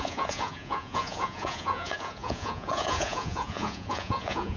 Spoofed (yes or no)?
yes